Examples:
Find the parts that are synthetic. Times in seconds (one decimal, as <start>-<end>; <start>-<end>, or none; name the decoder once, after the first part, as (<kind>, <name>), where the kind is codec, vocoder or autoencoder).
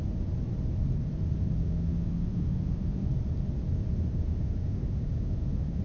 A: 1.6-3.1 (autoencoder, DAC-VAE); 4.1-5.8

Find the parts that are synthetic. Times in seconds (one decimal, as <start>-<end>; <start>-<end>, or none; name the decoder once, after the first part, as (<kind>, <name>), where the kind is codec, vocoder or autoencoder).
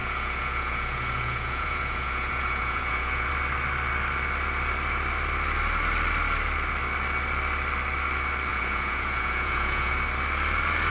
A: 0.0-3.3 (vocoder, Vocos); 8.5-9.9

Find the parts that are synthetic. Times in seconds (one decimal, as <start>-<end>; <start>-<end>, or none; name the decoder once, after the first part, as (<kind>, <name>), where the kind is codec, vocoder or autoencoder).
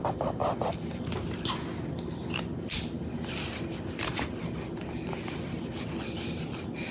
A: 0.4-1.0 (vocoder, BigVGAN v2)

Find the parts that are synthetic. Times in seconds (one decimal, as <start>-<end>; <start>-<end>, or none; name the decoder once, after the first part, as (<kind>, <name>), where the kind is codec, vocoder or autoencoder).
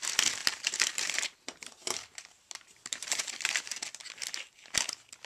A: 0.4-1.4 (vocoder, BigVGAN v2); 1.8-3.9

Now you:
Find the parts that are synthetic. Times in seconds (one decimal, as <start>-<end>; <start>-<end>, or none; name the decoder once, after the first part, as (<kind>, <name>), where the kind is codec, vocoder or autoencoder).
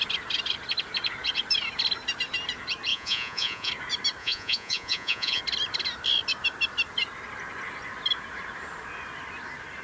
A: 2.9-3.7 (vocoder, Vocos); 4.2-5.4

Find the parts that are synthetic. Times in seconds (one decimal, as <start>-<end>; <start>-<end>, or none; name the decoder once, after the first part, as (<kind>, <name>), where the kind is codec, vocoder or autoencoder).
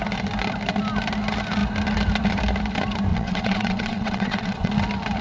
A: 3.1-4.7 (vocoder, WaveNeXt)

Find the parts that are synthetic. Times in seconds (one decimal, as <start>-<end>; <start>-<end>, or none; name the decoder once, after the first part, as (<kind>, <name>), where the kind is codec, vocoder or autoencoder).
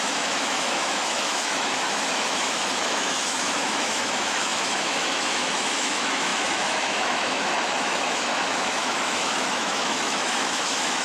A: 0.0-11.0 (autoencoder, DAC-VAE)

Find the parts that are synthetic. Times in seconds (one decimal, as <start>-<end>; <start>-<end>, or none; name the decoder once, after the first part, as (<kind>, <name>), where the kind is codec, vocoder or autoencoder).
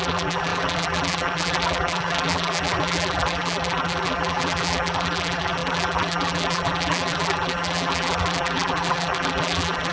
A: 0.0-9.9 (vocoder, BigVGAN v2)